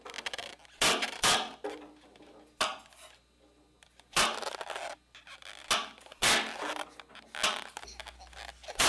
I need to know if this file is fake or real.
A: real